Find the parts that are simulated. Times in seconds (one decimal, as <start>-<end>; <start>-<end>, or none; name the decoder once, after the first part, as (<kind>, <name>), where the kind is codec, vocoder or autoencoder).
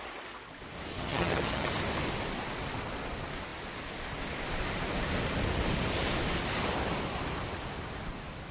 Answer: 0.9-1.7 (vocoder, HiFi-GAN)